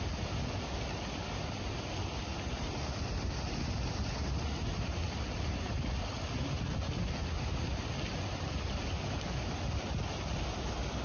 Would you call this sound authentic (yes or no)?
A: yes